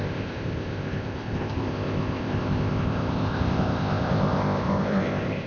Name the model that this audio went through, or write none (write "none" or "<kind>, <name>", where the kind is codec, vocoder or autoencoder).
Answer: codec, ZipCodec